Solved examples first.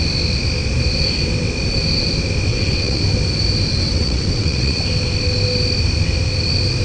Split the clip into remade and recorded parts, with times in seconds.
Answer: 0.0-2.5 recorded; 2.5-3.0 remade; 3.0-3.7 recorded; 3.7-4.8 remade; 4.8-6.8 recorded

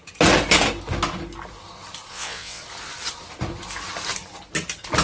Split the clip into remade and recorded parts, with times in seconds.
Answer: 0.0-2.1 recorded; 2.1-2.6 remade; 2.6-5.0 recorded

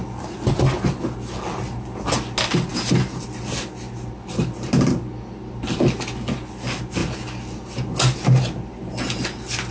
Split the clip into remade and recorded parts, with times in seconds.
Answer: 0.0-9.7 recorded

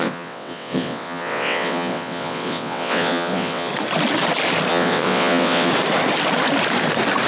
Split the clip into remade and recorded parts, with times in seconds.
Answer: 0.0-3.7 remade; 3.7-4.7 recorded; 4.7-5.7 remade; 5.7-7.3 recorded

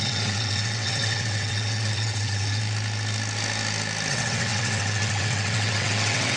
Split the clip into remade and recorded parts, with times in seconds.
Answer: 0.0-2.6 remade; 2.6-4.1 recorded; 4.1-6.4 remade

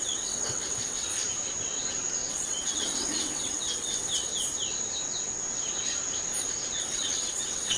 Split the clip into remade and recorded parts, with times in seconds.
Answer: 0.0-1.1 remade; 1.1-2.3 recorded; 2.3-4.3 remade; 4.3-6.8 recorded; 6.8-7.8 remade